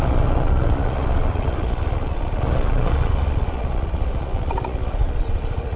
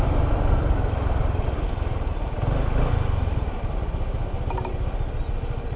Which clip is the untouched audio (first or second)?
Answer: second